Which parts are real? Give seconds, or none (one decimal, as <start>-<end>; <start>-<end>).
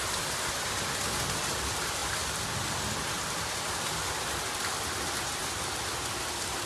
0.0-6.7